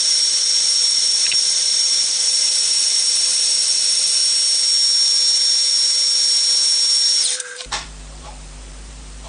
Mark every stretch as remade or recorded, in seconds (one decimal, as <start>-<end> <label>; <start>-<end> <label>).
0.0-4.2 remade; 4.2-7.2 recorded; 7.2-9.3 remade